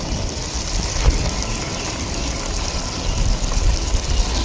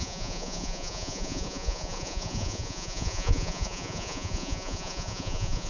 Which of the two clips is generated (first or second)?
second